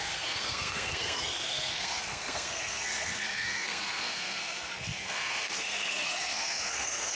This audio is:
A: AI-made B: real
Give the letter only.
A